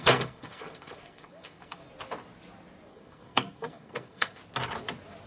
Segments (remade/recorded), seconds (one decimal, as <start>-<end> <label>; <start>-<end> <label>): 0.0-1.8 remade; 1.8-2.9 recorded; 2.9-4.4 remade; 4.4-5.3 recorded